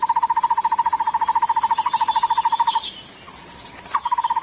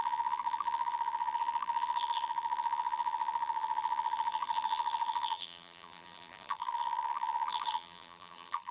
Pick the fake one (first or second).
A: second